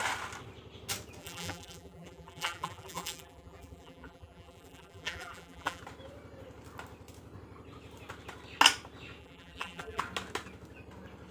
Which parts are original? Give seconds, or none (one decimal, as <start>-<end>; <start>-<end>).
0.0-1.2; 5.8-9.2; 10.0-11.3